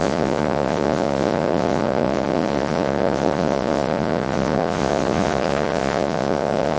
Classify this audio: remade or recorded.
remade